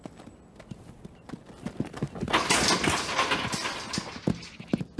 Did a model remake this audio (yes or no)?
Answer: no